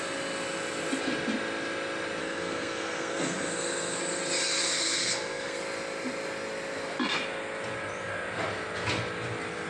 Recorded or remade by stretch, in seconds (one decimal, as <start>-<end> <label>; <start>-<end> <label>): 0.0-2.2 recorded; 2.2-4.0 remade; 4.0-4.6 recorded; 4.6-5.6 remade; 5.6-9.7 recorded